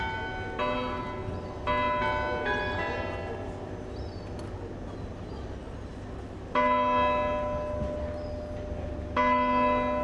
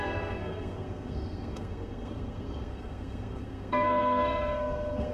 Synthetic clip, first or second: second